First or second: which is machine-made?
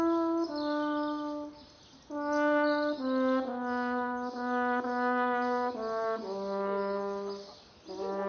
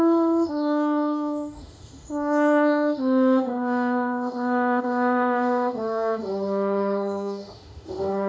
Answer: second